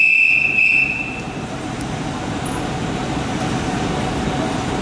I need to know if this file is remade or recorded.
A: recorded